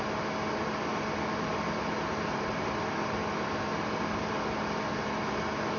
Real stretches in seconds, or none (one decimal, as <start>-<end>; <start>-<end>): 0.0-5.8

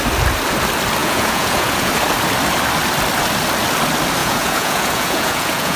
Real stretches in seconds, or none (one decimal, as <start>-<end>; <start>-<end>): 0.0-1.0; 1.9-4.2

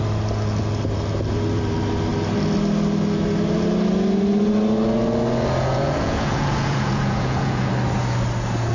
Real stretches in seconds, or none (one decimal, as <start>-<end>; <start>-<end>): 0.0-5.6; 7.7-8.7